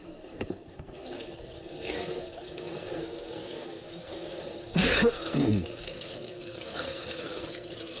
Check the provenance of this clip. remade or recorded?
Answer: remade